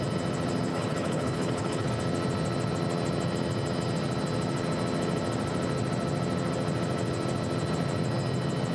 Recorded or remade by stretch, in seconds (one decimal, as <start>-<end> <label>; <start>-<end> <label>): 0.0-0.7 recorded; 0.7-1.9 remade; 1.9-8.7 recorded